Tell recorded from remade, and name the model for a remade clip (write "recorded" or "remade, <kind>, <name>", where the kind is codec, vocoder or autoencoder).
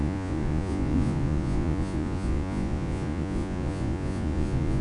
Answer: remade, vocoder, Vocos